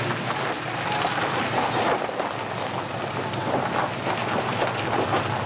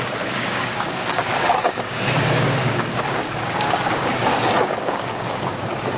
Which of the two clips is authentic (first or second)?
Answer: first